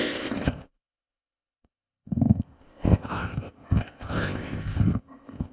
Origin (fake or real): fake